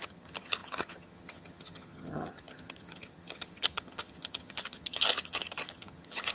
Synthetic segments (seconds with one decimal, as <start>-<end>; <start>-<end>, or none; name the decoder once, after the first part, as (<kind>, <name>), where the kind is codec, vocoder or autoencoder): 0.0-6.3 (vocoder, HiFi-GAN)